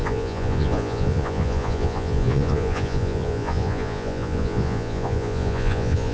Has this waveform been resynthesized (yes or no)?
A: yes